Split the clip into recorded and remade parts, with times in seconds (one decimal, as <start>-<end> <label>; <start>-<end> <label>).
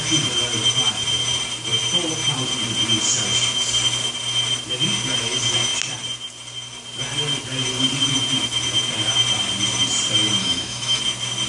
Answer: 0.0-10.4 recorded; 10.4-11.0 remade; 11.0-11.5 recorded